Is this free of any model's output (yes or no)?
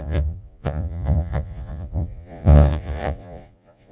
no